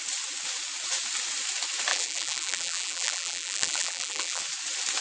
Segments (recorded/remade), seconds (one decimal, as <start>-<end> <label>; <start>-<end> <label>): 0.0-1.9 recorded; 1.9-4.4 remade; 4.4-5.0 recorded

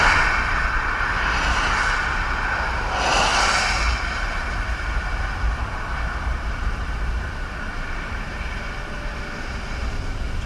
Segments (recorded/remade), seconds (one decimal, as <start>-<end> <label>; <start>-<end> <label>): 0.0-3.3 recorded; 3.3-8.2 remade; 8.2-10.5 recorded

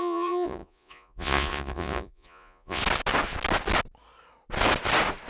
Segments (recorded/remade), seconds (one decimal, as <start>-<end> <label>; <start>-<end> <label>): 0.0-2.8 remade; 2.8-5.3 recorded

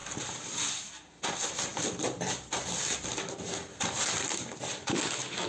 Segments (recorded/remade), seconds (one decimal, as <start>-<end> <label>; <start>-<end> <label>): 0.0-0.7 remade; 0.7-1.7 recorded; 1.7-5.0 remade; 5.0-5.5 recorded

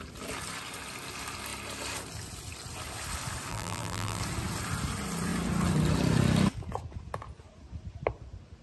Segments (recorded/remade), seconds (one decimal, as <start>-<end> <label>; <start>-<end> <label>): 0.0-3.5 recorded; 3.5-4.2 remade; 4.2-8.6 recorded